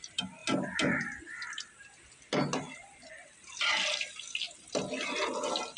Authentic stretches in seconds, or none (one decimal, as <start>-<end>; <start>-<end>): 0.0-5.8